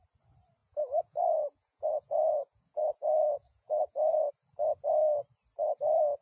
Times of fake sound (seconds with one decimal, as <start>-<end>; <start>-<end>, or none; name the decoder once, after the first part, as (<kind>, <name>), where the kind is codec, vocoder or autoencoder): 0.6-4.3 (vocoder, Vocos)